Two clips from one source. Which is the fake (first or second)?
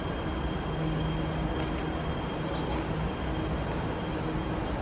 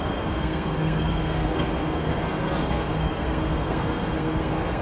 second